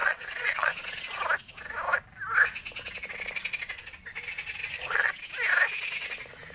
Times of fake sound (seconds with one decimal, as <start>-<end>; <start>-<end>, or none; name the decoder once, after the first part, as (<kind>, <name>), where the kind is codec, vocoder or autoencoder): 0.0-1.0 (vocoder, Vocos); 4.6-5.1